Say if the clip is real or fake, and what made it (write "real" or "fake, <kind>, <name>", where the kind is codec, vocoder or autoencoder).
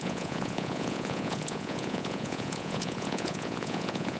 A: fake, vocoder, Vocos